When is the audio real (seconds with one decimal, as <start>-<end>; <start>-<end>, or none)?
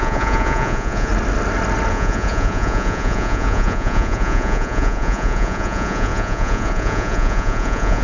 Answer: 1.1-1.9